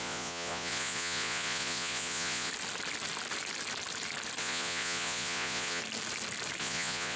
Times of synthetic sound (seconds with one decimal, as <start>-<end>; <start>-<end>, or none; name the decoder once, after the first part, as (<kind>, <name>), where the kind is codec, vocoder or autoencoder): 0.0-2.5 (vocoder, Vocos); 4.4-5.8; 6.6-7.2